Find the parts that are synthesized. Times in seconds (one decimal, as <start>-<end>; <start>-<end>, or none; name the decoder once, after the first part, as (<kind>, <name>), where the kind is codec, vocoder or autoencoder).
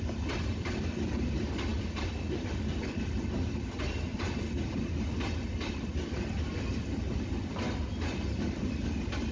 none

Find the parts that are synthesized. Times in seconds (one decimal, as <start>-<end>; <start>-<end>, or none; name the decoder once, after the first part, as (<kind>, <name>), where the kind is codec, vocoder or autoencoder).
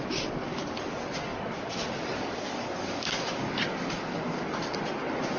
1.3-4.5 (codec, DAC)